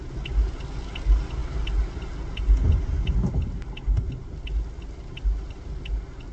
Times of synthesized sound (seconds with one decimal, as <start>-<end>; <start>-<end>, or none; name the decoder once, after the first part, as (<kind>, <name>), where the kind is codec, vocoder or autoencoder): none